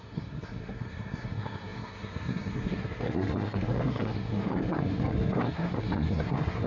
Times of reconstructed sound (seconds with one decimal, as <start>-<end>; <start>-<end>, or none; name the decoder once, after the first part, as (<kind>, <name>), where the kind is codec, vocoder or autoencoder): 0.0-6.7 (codec, SNAC)